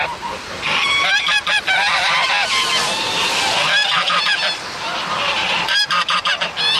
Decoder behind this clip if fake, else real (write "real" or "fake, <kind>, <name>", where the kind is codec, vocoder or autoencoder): fake, vocoder, BigVGAN v2